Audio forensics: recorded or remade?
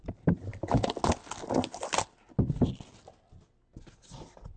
recorded